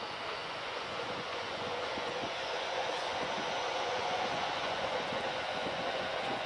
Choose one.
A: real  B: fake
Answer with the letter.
B